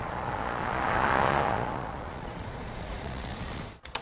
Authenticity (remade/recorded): remade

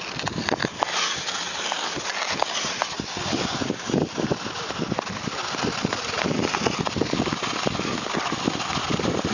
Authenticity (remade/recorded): recorded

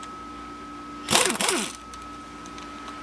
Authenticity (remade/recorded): recorded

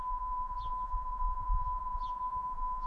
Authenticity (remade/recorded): remade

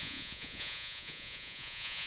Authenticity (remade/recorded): remade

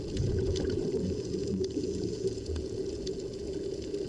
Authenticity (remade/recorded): remade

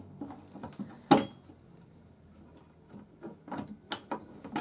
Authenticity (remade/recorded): recorded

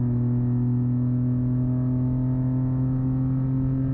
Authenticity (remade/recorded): recorded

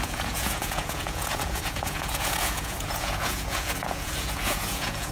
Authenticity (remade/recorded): remade